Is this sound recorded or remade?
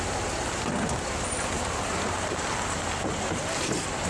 recorded